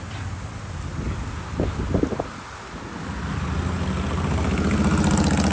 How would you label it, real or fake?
real